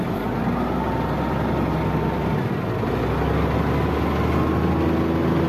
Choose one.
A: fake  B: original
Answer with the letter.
B